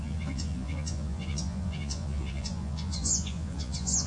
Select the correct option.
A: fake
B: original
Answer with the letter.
A